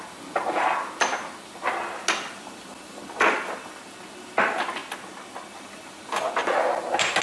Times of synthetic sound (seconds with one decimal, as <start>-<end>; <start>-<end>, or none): 4.8-5.5